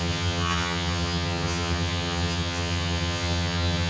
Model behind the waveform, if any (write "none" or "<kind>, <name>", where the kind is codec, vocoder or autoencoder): vocoder, HiFi-GAN